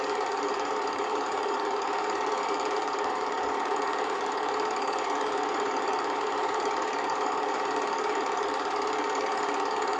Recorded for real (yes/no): no